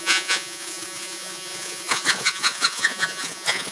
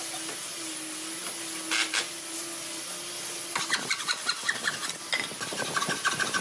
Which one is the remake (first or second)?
first